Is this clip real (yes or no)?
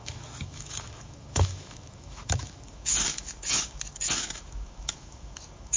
no